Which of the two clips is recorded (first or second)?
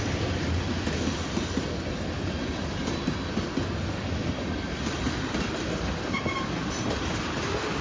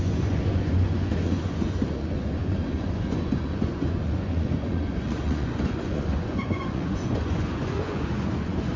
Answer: first